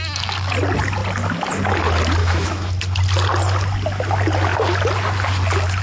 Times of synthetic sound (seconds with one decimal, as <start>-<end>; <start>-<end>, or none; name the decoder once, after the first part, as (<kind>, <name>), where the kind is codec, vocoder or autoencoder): 2.2-2.7 (autoencoder, DAC-VAE)